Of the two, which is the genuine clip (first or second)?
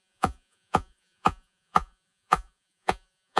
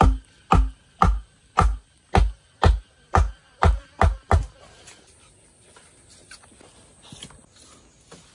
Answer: second